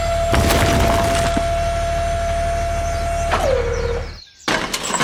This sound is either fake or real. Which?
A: real